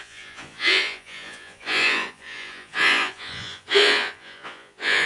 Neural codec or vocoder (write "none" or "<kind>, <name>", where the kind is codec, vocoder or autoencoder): vocoder, Vocos